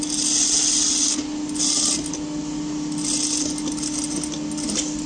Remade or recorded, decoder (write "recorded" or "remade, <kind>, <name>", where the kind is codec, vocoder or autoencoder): recorded